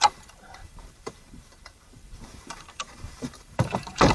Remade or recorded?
remade